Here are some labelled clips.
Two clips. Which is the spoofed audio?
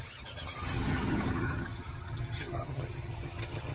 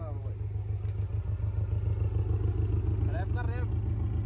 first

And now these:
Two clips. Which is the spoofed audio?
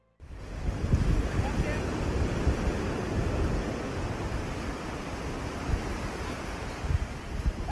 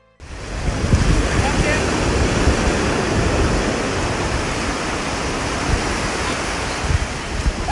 first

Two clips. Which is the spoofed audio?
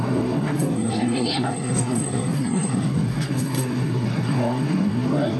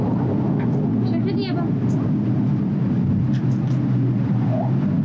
first